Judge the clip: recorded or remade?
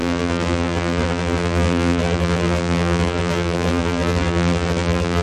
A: remade